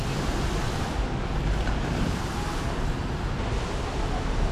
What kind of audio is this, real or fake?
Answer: real